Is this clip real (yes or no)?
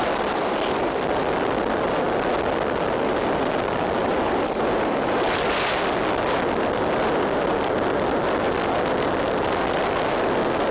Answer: yes